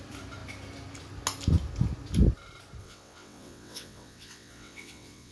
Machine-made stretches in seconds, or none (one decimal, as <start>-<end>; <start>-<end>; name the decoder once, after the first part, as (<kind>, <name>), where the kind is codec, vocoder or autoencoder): 2.8-5.3 (vocoder, WaveNeXt)